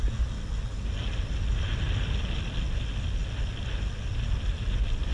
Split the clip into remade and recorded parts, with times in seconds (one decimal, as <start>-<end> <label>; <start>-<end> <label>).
0.0-5.1 recorded